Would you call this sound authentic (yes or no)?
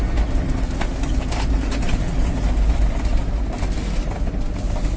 yes